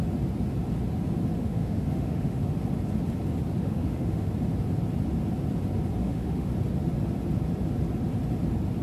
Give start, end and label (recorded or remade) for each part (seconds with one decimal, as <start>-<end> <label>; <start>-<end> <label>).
0.0-1.4 recorded; 1.4-2.4 remade; 2.4-3.6 recorded; 3.6-4.3 remade; 4.3-6.0 recorded; 6.0-6.5 remade; 6.5-8.8 recorded